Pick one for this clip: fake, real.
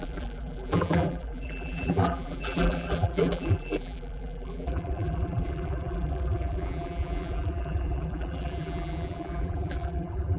fake